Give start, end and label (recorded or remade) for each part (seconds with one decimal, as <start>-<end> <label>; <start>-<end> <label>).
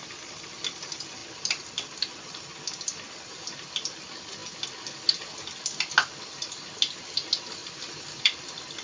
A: 0.0-8.8 recorded